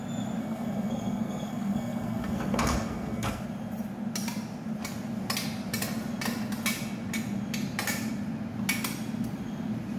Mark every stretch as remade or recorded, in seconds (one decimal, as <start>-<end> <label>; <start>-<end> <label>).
0.0-0.4 recorded; 0.4-3.4 remade; 3.4-10.0 recorded